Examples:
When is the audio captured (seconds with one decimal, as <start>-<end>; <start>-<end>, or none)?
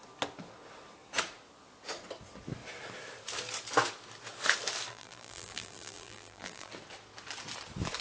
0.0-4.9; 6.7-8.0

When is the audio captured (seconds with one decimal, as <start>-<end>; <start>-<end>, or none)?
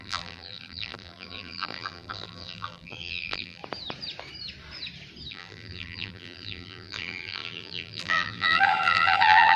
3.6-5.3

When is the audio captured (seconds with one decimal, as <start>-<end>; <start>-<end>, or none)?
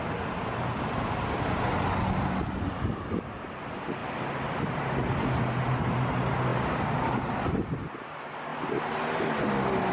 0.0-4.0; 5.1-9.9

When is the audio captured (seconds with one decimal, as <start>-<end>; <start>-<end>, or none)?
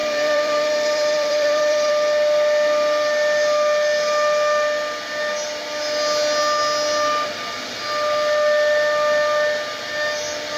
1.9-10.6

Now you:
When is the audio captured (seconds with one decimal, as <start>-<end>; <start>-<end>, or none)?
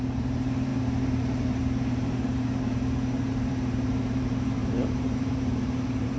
none